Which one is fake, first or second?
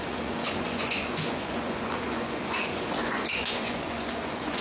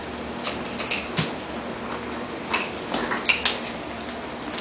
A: first